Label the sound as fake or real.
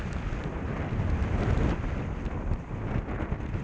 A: real